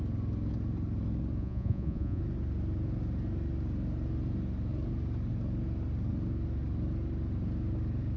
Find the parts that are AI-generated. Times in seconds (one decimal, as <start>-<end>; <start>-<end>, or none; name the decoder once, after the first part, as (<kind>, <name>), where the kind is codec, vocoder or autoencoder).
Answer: 1.4-2.2 (vocoder, Vocos)